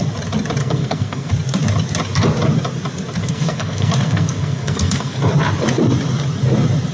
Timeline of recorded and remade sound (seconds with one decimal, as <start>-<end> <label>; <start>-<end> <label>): 0.0-0.6 recorded; 0.6-1.3 remade; 1.3-3.2 recorded; 3.2-5.2 remade; 5.2-6.9 recorded